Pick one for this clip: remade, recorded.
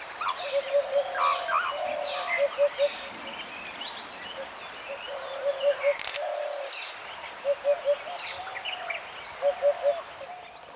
recorded